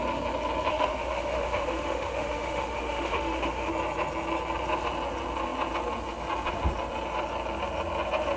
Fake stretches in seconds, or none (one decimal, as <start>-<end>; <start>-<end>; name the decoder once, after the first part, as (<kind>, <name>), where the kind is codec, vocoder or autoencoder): 0.7-3.7 (autoencoder, DAC-VAE)